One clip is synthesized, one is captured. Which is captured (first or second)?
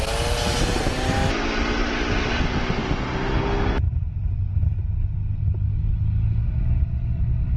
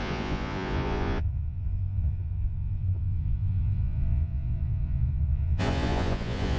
first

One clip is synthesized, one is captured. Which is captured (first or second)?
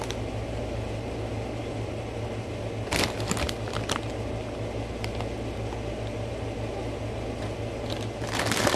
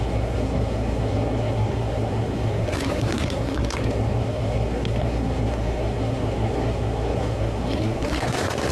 first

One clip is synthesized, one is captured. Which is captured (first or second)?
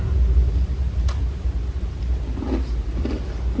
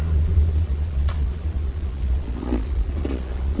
first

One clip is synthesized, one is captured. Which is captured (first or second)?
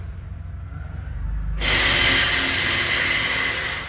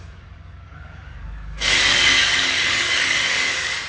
first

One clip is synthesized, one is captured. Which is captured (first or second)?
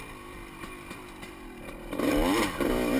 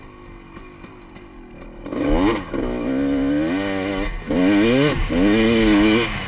second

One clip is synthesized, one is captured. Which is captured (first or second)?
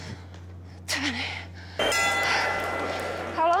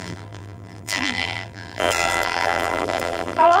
first